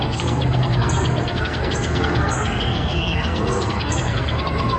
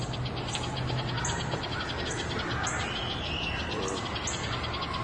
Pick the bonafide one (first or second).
second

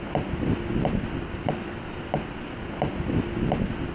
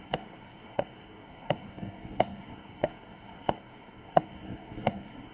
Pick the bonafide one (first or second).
first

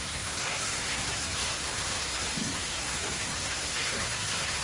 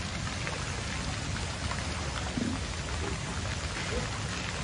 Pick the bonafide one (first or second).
second